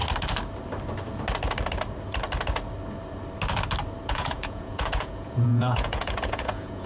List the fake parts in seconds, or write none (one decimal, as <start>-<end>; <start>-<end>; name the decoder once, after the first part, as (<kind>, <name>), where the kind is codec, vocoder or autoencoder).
4.1-6.9 (vocoder, Vocos)